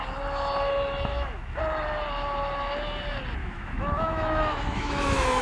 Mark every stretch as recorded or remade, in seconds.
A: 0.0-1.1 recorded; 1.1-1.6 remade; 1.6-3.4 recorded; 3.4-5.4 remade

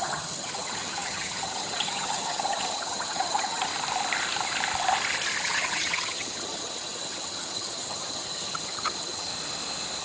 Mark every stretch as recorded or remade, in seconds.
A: 0.0-3.7 remade; 3.7-5.4 recorded; 5.4-9.3 remade; 9.3-10.0 recorded

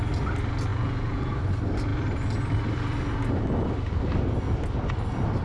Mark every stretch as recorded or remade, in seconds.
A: 0.0-0.7 recorded; 0.7-1.3 remade; 1.3-5.4 recorded

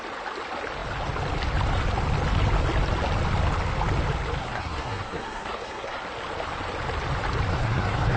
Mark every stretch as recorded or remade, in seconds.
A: 0.0-4.4 recorded; 4.4-6.0 remade; 6.0-7.5 recorded; 7.5-8.2 remade

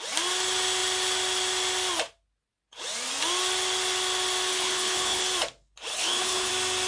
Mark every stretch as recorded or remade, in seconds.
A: 0.0-4.5 recorded; 4.5-5.2 remade; 5.2-5.9 recorded; 5.9-6.5 remade; 6.5-6.9 recorded

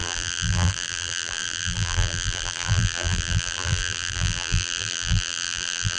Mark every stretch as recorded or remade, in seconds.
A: 0.0-6.0 remade

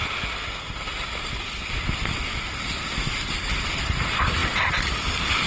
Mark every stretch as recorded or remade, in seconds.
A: 0.0-5.5 recorded

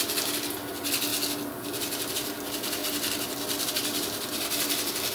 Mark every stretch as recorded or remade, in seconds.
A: 0.0-5.1 recorded